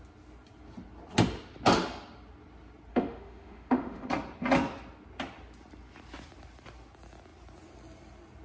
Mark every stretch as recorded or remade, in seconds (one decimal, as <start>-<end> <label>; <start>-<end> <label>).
0.0-2.9 recorded; 2.9-4.1 remade; 4.1-8.4 recorded